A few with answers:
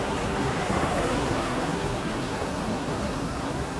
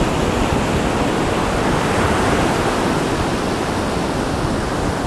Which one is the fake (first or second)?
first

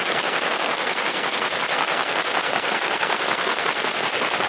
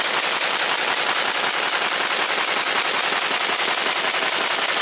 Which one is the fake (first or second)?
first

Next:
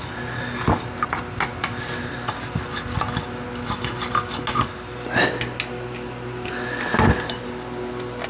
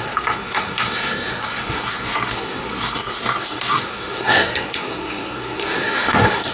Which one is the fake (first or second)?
second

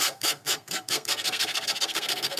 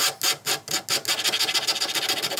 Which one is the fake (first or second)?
first